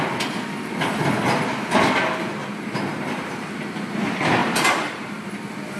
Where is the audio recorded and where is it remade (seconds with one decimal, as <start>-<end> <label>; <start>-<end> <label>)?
0.0-2.4 recorded; 2.4-3.3 remade; 3.3-4.4 recorded; 4.4-5.3 remade; 5.3-5.8 recorded

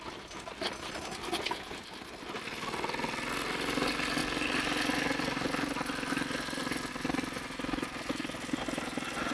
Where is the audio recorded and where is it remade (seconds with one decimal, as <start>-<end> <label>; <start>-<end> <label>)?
0.0-9.3 recorded

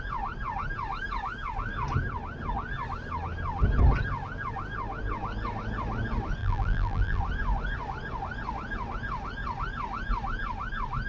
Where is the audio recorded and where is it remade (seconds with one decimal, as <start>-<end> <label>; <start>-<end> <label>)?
0.0-6.4 recorded; 6.4-7.2 remade; 7.2-11.1 recorded

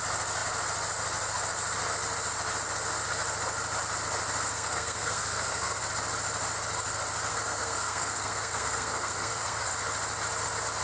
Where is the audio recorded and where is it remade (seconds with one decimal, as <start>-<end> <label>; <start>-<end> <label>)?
0.0-4.5 recorded; 4.5-5.8 remade; 5.8-7.3 recorded; 7.3-9.7 remade; 9.7-10.8 recorded

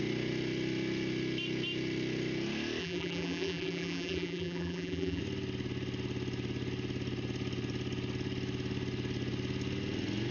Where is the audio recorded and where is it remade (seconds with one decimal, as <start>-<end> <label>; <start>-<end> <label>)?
0.0-2.8 recorded; 2.8-5.2 remade; 5.2-10.3 recorded